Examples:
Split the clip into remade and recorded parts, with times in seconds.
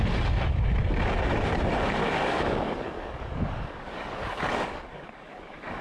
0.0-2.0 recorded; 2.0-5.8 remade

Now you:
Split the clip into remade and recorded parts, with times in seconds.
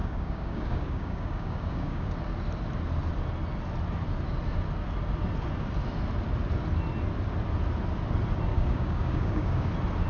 0.0-2.1 remade; 2.1-8.5 recorded; 8.5-9.7 remade; 9.7-10.1 recorded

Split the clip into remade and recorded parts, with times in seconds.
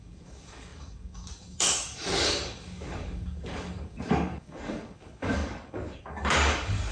0.0-6.9 remade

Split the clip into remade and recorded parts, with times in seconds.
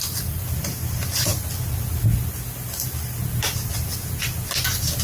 0.0-5.0 recorded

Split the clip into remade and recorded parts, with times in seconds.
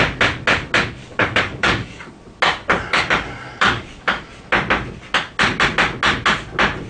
0.0-1.0 recorded; 1.0-2.1 remade; 2.1-2.9 recorded; 2.9-4.2 remade; 4.2-6.9 recorded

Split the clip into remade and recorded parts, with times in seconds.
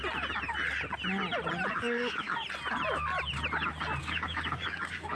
0.0-1.7 recorded; 1.7-2.3 remade; 2.3-4.0 recorded; 4.0-5.2 remade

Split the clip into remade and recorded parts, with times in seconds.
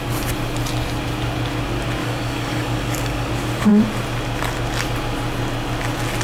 0.0-2.0 recorded; 2.0-3.3 remade; 3.3-6.2 recorded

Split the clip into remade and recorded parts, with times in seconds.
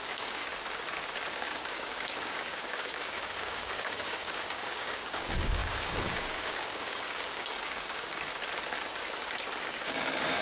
0.0-0.4 remade; 0.4-1.3 recorded; 1.3-8.3 remade; 8.3-9.6 recorded; 9.6-10.4 remade